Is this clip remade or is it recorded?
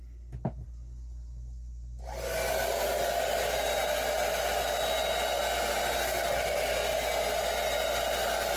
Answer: recorded